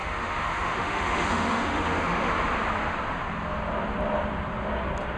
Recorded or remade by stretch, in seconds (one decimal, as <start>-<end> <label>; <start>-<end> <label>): 0.0-2.3 remade; 2.3-5.2 recorded